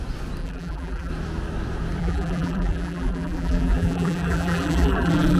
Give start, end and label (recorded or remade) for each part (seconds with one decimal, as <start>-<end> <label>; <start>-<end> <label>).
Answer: 0.0-0.4 recorded; 0.4-1.1 remade; 1.1-2.0 recorded; 2.0-5.4 remade